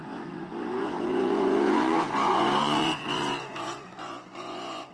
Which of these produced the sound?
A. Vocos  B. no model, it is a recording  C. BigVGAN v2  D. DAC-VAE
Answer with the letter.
A